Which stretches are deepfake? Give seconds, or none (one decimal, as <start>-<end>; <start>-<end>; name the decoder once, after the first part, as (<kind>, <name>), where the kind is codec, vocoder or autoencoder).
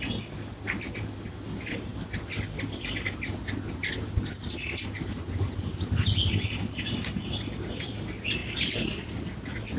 none